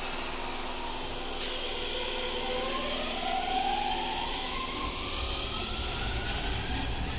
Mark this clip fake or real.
real